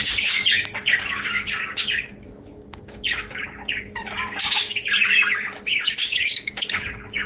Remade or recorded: remade